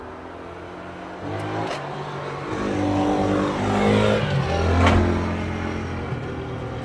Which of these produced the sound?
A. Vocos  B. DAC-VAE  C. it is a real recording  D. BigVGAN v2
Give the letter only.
C